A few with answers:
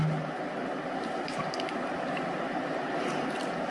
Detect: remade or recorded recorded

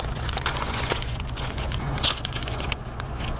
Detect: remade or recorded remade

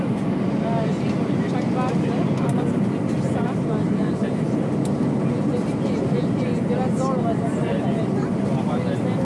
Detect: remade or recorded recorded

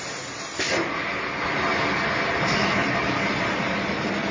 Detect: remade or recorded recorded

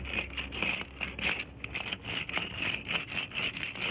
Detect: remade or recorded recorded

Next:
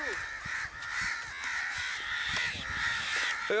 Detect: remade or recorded recorded